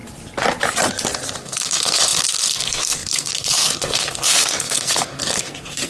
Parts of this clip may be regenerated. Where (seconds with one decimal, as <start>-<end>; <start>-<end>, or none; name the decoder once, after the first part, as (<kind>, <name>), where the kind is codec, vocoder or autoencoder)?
1.4-5.9 (codec, SNAC)